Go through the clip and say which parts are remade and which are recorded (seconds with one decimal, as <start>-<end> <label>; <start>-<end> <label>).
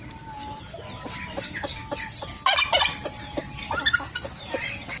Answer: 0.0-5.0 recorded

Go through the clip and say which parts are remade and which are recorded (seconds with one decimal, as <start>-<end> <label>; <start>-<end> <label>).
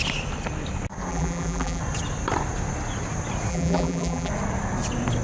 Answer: 0.0-1.1 recorded; 1.1-1.8 remade; 1.8-3.5 recorded; 3.5-4.3 remade; 4.3-5.2 recorded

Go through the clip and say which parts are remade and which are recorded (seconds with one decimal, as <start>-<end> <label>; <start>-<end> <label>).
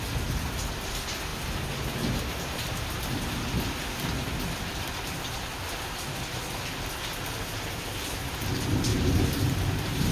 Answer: 0.0-8.9 recorded; 8.9-10.1 remade